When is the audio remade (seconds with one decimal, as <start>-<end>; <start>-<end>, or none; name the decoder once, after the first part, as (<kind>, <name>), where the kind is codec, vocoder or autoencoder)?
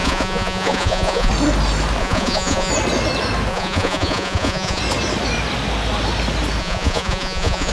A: 0.0-1.3 (vocoder, Vocos); 2.0-2.7; 3.5-4.8; 6.6-7.7